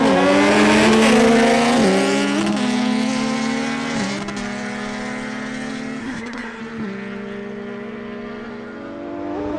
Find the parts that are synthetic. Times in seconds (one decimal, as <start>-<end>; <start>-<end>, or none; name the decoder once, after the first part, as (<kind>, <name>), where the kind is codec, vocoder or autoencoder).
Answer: 6.0-6.6 (codec, SNAC)